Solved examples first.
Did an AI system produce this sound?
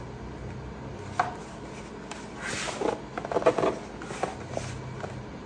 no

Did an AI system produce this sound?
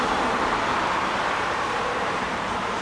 yes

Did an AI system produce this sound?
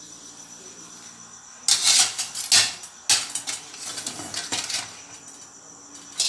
no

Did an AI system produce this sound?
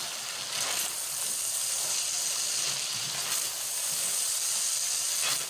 no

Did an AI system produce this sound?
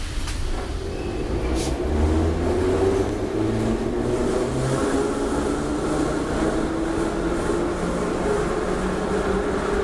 no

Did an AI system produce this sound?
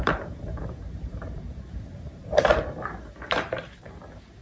yes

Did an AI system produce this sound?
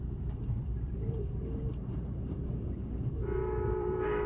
yes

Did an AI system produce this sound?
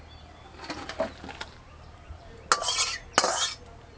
no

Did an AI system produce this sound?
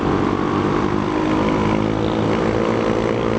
no